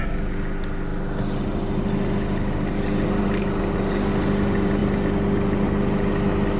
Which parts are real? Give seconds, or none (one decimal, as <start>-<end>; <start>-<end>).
0.0-6.6